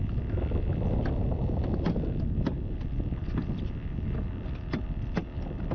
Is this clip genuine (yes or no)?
yes